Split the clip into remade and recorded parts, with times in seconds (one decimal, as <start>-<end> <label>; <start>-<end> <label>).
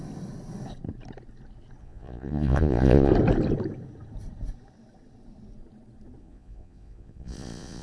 0.0-1.8 recorded; 1.8-3.1 remade; 3.1-6.2 recorded; 6.2-7.8 remade